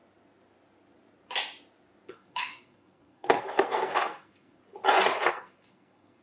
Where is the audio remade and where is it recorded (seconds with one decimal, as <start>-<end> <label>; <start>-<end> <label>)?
0.0-2.1 recorded; 2.1-4.6 remade; 4.6-5.3 recorded; 5.3-6.2 remade